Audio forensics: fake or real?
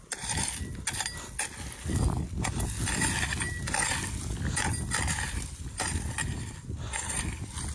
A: real